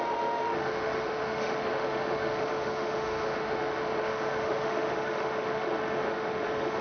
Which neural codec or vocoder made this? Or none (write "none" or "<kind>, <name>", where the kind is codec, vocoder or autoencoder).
autoencoder, DAC-VAE